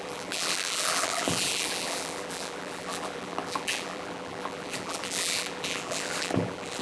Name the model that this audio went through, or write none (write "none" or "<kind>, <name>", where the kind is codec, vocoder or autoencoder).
vocoder, BigVGAN v2